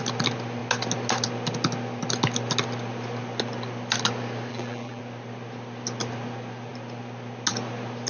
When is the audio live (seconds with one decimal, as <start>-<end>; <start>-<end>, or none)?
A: 0.0-4.5; 5.0-8.1